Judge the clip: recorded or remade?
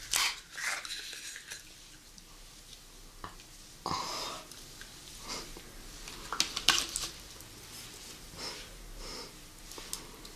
recorded